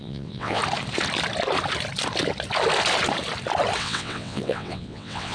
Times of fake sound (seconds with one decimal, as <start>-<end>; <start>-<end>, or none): 0.0-0.6; 3.8-5.3